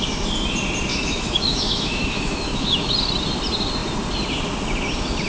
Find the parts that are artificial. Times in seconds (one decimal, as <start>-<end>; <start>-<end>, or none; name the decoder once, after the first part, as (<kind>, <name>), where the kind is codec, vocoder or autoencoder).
0.9-2.9 (autoencoder, DAC-VAE)

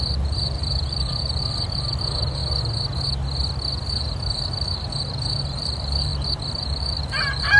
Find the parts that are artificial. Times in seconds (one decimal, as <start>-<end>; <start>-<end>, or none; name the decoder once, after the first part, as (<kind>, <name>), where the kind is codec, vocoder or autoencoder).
0.0-2.4 (vocoder, BigVGAN v2); 4.0-7.6

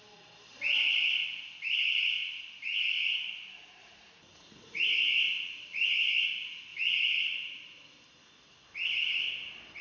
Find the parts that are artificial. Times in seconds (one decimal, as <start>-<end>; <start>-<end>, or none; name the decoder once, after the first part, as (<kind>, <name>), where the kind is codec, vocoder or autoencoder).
2.7-3.2 (vocoder, Vocos); 3.8-4.8; 6.7-7.2

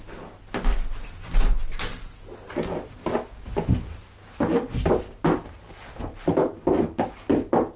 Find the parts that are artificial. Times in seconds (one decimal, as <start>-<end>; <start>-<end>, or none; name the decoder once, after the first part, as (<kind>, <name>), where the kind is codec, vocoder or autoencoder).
none

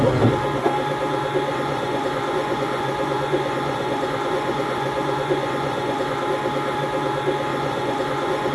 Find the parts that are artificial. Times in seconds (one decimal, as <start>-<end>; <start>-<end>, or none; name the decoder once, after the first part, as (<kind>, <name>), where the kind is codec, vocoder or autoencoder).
1.5-6.2 (vocoder, Vocos); 7.5-8.5

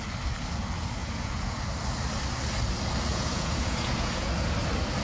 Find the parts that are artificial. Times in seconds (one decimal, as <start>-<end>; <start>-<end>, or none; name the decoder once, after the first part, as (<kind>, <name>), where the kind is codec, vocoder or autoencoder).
1.0-1.6 (vocoder, Vocos); 3.1-4.3